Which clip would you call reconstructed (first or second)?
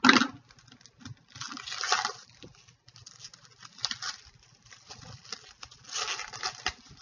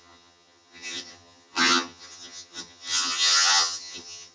second